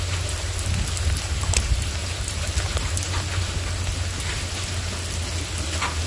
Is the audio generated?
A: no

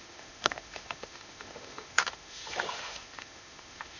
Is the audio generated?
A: yes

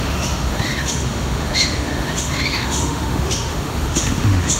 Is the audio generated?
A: yes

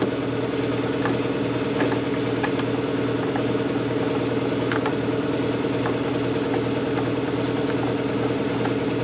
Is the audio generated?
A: no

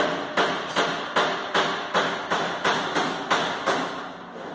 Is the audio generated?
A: no